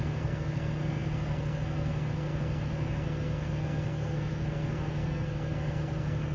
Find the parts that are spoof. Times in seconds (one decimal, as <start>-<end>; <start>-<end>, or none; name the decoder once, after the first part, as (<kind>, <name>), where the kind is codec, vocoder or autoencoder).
0.0-6.3 (codec, SNAC)